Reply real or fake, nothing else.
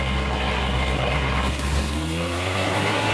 fake